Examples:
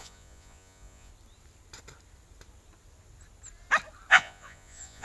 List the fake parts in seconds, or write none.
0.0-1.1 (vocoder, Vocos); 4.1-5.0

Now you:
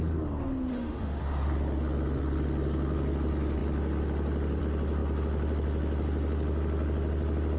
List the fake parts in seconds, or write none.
0.7-1.2 (autoencoder, DAC-VAE)

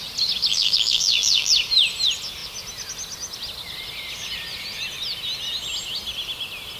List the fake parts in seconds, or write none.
0.5-1.5 (vocoder, BigVGAN v2)

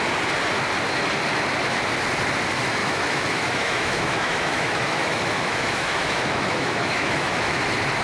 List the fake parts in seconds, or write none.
2.8-7.6 (autoencoder, DAC-VAE)

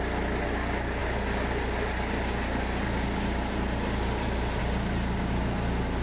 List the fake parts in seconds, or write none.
none

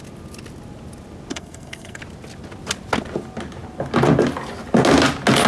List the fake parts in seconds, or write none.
1.3-2.0 (codec, SNAC)

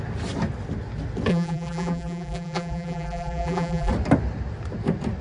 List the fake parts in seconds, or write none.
1.3-3.9 (vocoder, BigVGAN v2)

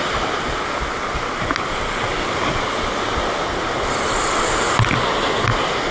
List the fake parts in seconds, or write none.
none